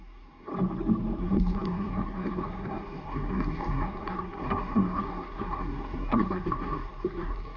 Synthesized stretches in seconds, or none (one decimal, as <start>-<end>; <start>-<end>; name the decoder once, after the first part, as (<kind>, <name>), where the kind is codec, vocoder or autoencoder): 0.0-0.5 (codec, SNAC); 1.2-7.6